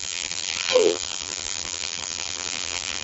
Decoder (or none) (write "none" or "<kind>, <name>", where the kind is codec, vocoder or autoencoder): vocoder, BigVGAN v2